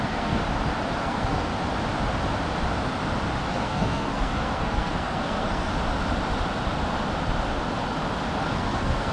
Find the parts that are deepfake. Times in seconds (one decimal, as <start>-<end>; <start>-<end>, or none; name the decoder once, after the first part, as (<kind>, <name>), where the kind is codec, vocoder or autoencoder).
0.0-0.4 (codec, SNAC); 1.0-1.5; 3.5-5.7; 8.4-9.1